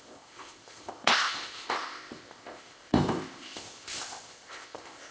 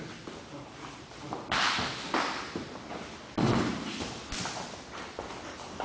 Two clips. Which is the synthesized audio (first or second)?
first